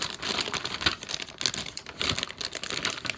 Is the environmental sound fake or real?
real